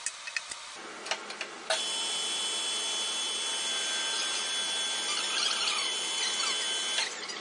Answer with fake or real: real